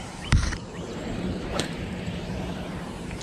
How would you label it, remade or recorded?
remade